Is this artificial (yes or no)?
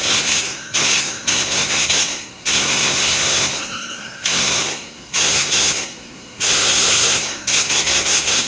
yes